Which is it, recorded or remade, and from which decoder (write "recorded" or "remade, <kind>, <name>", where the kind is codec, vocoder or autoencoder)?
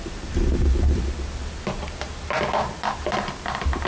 recorded